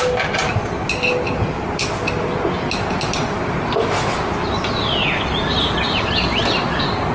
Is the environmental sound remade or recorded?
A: recorded